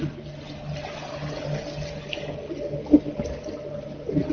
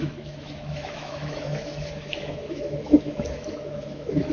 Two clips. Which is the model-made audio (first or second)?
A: second